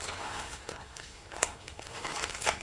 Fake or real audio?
fake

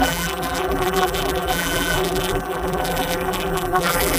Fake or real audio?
fake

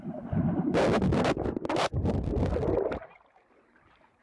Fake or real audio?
real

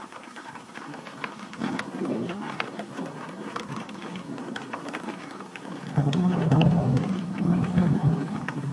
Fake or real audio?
fake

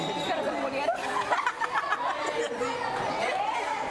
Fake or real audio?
real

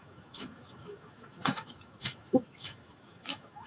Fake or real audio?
fake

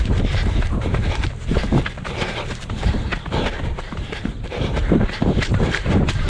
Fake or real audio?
fake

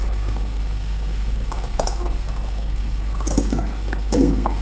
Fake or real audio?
fake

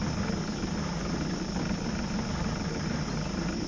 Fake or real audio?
real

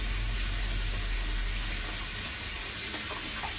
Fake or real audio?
real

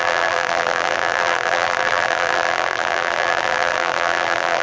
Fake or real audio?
fake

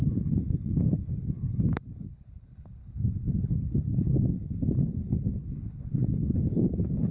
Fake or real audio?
fake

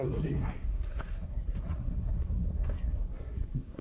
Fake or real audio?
fake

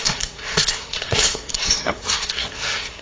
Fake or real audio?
fake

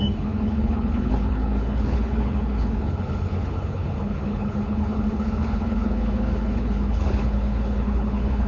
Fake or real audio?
fake